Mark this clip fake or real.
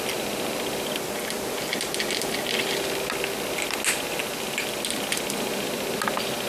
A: real